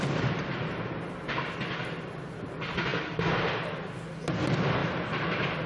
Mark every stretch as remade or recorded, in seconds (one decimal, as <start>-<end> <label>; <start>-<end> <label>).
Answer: 0.0-2.9 recorded; 2.9-3.5 remade; 3.5-4.8 recorded; 4.8-5.7 remade

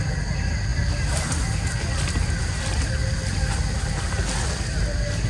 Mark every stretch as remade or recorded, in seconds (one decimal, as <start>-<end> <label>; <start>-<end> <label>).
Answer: 0.0-5.3 recorded

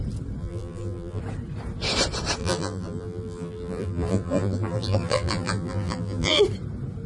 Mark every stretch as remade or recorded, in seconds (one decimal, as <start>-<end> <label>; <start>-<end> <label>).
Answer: 0.0-0.4 recorded; 0.4-1.2 remade; 1.2-2.4 recorded; 2.4-6.4 remade; 6.4-7.1 recorded

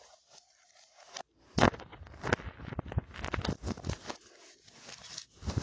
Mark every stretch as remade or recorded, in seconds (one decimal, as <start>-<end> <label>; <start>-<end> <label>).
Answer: 0.0-5.6 recorded